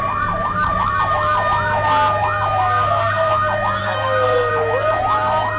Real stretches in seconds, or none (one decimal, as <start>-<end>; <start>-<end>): 0.0-2.6; 3.3-3.8; 4.5-5.6